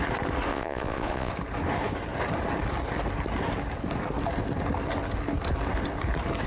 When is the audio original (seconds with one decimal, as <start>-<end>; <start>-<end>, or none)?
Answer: 0.0-0.5; 1.3-6.5